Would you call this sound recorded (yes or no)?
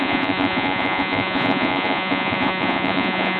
no